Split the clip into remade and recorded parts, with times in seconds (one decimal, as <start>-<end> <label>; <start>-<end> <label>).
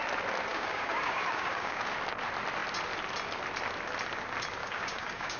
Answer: 0.0-0.5 recorded; 0.5-1.9 remade; 1.9-4.6 recorded; 4.6-5.4 remade